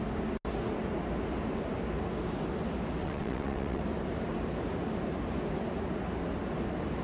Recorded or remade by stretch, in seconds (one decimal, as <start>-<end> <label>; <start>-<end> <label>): 0.0-3.0 recorded; 3.0-3.8 remade; 3.8-7.0 recorded